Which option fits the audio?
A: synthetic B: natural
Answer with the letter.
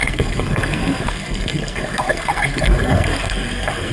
A